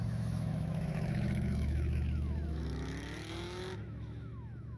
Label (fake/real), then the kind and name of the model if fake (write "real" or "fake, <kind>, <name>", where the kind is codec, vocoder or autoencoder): fake, autoencoder, DAC-VAE